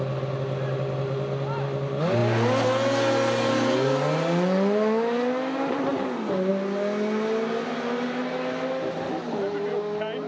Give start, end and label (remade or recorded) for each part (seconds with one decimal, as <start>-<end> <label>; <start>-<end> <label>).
0.0-10.3 recorded